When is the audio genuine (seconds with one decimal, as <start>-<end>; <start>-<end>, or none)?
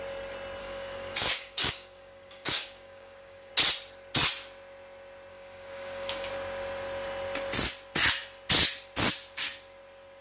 0.0-0.6; 3.5-5.3; 6.3-10.2